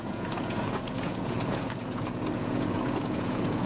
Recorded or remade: remade